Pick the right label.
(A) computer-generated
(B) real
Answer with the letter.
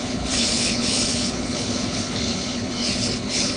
A